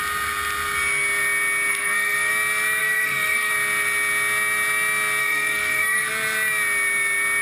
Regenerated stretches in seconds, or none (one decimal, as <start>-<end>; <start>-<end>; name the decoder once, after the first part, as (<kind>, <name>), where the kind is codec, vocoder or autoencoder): 1.7-2.3 (codec, SNAC); 2.8-3.5; 5.2-6.1

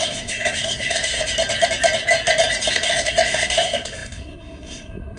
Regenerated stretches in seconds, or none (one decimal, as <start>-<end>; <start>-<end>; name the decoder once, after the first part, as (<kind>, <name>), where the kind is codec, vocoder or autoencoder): 0.0-1.2 (codec, SNAC); 2.7-5.2

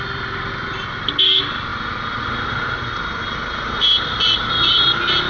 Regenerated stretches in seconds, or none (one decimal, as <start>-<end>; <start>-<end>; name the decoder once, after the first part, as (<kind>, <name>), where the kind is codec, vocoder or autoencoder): none